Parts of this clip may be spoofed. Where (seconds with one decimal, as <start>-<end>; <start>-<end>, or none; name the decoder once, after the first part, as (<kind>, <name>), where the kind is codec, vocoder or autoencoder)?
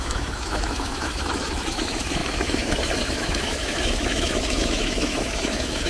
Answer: 0.0-5.9 (autoencoder, DAC-VAE)